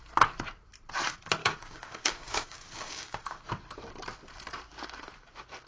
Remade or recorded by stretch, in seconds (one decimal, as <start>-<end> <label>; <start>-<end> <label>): 0.0-1.4 recorded; 1.4-3.5 remade; 3.5-5.7 recorded